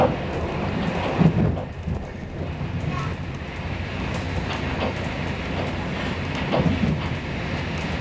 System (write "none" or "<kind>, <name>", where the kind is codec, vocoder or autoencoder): none